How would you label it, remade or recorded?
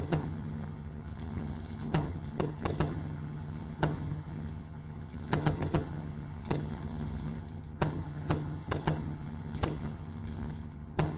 remade